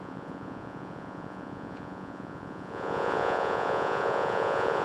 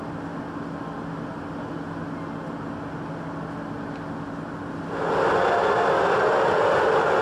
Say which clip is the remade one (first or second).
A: first